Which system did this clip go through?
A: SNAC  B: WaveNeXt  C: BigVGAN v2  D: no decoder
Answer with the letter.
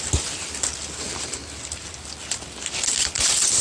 D